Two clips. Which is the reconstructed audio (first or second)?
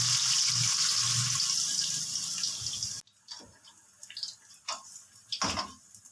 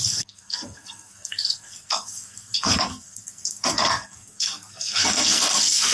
second